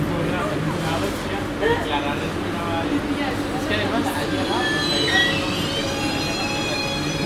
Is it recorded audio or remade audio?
recorded